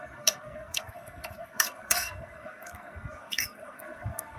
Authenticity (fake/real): fake